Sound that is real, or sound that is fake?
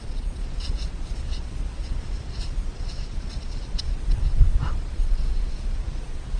fake